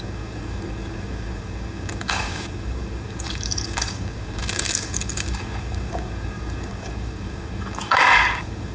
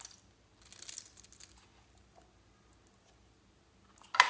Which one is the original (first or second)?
second